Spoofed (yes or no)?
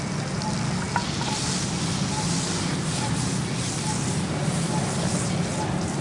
no